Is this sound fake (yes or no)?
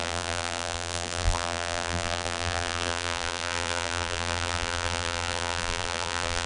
yes